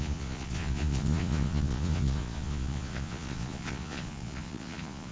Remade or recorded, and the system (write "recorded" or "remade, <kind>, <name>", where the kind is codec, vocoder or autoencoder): remade, vocoder, Vocos